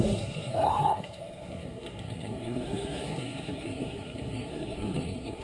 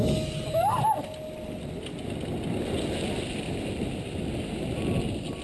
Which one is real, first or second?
second